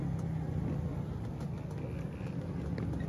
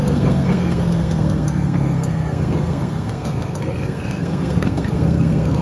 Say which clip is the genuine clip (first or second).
first